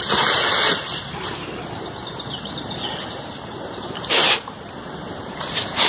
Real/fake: fake